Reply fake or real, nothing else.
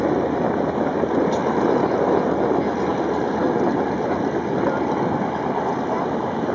real